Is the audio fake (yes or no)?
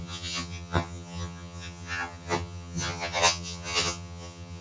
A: yes